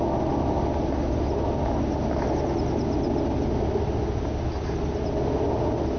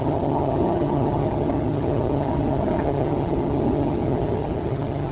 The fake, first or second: second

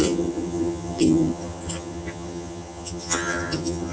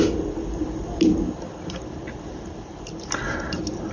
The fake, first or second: first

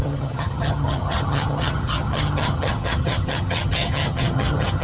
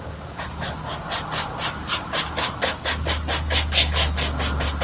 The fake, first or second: first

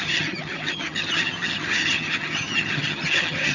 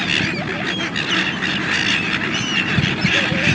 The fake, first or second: first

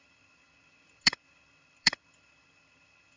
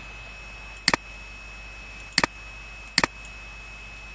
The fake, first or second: first